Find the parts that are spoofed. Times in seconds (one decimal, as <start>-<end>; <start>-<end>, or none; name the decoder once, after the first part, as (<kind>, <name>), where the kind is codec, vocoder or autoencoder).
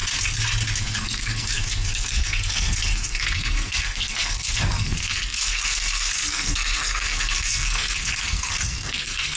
0.8-9.4 (codec, SNAC)